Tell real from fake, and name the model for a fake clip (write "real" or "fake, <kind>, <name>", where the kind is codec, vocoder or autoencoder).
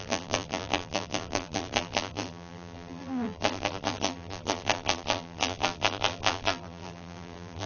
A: fake, vocoder, BigVGAN v2